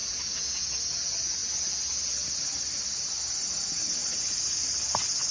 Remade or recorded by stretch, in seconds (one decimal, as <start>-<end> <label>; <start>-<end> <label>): 0.0-5.3 recorded